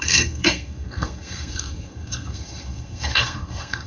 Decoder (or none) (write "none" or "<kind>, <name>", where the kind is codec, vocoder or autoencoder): codec, SNAC